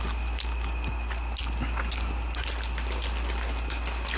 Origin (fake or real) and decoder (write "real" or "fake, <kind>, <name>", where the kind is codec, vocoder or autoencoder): real